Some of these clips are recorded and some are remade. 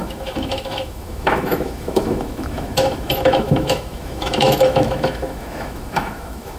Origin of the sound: remade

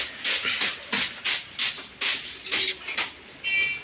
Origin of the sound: recorded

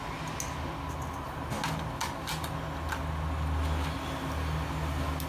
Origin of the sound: recorded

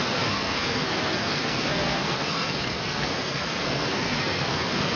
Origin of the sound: remade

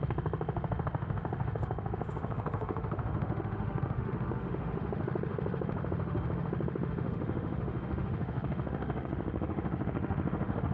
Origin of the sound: remade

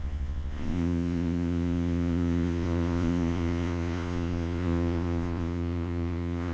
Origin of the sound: remade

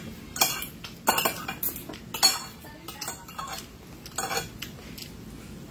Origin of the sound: recorded